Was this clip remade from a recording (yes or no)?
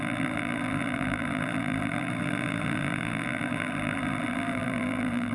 yes